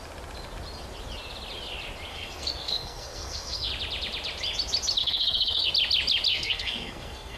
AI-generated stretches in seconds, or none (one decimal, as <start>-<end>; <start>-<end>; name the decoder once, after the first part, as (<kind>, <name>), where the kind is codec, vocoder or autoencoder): 2.1-3.7 (codec, SNAC); 5.0-5.7; 6.3-7.4